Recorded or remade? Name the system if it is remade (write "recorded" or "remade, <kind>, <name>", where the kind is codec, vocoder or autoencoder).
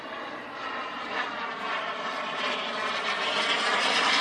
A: recorded